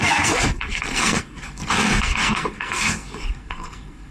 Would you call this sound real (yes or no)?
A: no